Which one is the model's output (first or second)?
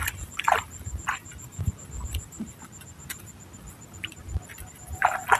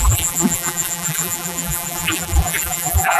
second